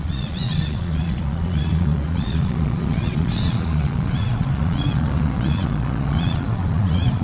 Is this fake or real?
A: fake